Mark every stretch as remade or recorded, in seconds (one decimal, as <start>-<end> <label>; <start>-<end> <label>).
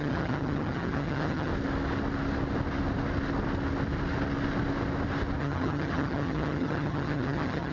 0.0-1.5 remade; 1.5-5.4 recorded; 5.4-7.7 remade